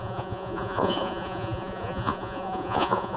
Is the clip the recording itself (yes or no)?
no